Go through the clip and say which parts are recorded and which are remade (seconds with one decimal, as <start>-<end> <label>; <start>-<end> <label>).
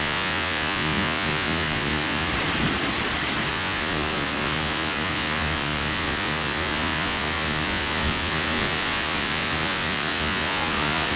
0.0-2.3 remade; 2.3-3.5 recorded; 3.5-11.2 remade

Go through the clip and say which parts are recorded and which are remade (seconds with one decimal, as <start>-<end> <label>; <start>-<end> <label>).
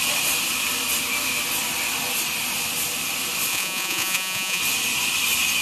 0.0-3.5 recorded; 3.5-4.6 remade; 4.6-5.6 recorded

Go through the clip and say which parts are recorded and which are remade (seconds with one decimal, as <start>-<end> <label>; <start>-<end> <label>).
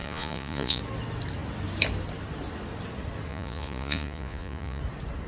0.0-0.8 remade; 0.8-3.3 recorded; 3.3-4.8 remade; 4.8-5.3 recorded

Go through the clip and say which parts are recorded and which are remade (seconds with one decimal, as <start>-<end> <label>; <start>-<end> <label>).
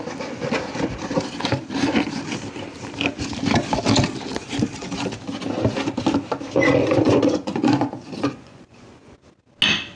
0.0-6.8 recorded; 6.8-9.1 remade; 9.1-10.0 recorded